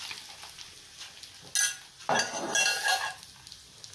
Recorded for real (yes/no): yes